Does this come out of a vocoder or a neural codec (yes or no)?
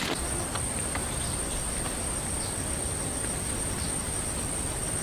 yes